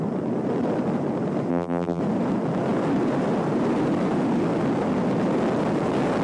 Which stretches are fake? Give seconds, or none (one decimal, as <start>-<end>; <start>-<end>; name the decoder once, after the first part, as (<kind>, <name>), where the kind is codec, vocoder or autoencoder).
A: 1.5-2.0 (vocoder, BigVGAN v2)